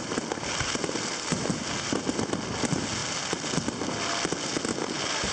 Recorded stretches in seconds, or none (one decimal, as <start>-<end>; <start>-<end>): 0.0-5.3